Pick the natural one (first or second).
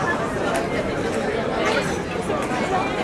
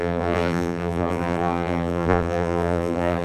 first